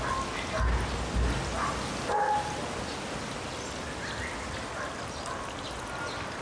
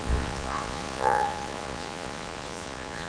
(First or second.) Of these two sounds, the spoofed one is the second